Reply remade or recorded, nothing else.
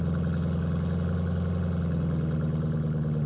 recorded